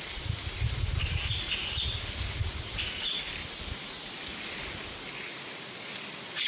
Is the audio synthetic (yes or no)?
no